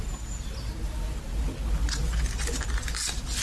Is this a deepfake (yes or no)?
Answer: no